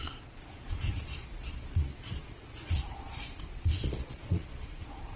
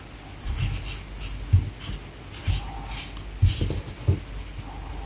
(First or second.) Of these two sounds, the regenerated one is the first